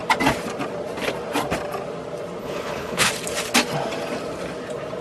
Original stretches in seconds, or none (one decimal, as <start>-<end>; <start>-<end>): 0.0-2.4; 3.1-5.0